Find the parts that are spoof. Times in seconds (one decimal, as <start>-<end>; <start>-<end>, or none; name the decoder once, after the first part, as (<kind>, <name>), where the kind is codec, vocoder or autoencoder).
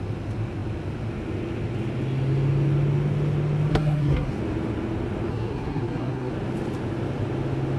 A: 3.7-4.3 (codec, SNAC); 5.3-6.3